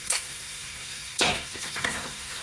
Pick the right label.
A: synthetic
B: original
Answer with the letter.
A